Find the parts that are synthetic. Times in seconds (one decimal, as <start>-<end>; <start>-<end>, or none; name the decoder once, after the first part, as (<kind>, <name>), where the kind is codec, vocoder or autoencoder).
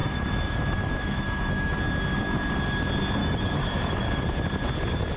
0.0-1.8 (autoencoder, DAC-VAE); 3.2-4.2